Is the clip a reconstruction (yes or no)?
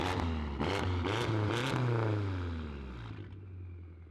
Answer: no